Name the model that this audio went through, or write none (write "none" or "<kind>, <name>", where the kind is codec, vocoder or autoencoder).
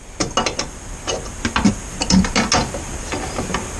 none